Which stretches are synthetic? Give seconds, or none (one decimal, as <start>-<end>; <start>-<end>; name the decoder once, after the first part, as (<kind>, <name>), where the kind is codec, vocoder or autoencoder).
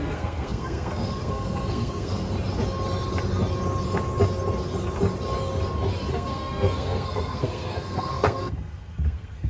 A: 0.0-2.1 (codec, SNAC); 6.1-9.5